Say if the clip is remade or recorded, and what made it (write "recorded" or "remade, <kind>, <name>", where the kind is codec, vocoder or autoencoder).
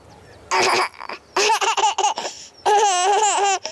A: recorded